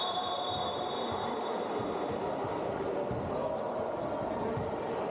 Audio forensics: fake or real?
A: real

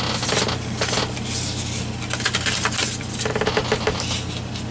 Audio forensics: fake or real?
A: real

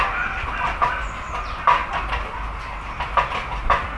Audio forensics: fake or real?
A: real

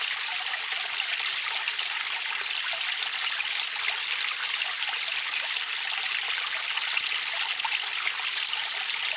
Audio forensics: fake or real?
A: real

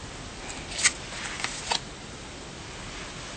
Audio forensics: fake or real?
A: real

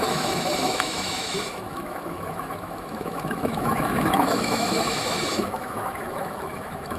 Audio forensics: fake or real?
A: fake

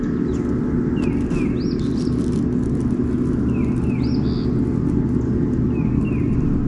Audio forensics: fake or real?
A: real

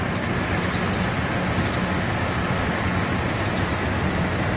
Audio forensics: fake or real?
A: real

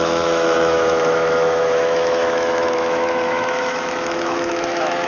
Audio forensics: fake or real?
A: fake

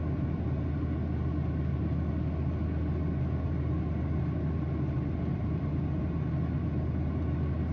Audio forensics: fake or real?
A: real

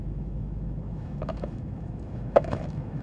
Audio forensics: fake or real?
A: fake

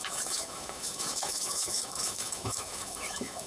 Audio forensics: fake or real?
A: fake